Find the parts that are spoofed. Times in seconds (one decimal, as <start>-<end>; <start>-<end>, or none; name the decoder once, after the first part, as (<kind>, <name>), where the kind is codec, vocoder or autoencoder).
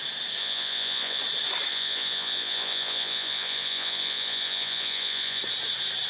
0.4-1.2 (vocoder, Vocos); 1.7-5.4